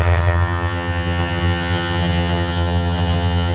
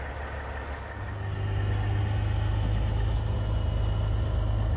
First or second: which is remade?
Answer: first